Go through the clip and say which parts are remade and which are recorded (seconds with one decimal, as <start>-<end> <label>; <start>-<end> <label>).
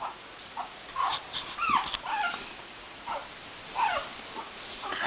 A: 0.0-1.1 remade; 1.1-2.6 recorded; 2.6-3.2 remade; 3.2-4.4 recorded; 4.4-5.1 remade